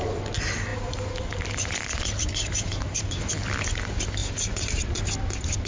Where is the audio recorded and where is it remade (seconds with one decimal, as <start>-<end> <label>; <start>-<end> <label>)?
0.0-0.7 recorded; 0.7-3.3 remade; 3.3-4.2 recorded; 4.2-5.0 remade; 5.0-5.7 recorded